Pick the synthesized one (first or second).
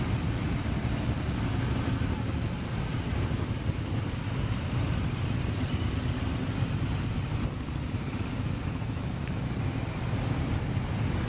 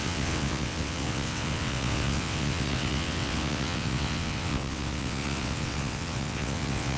second